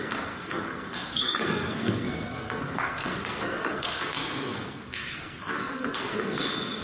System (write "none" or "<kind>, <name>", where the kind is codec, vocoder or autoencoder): codec, SNAC